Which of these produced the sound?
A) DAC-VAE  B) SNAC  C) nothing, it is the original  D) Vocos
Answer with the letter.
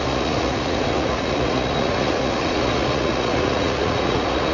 D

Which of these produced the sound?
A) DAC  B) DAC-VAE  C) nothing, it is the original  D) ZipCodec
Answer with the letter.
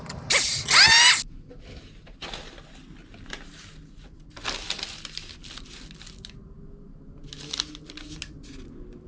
C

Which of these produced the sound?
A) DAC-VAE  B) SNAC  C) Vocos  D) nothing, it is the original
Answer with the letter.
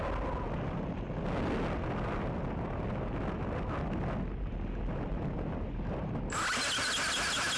D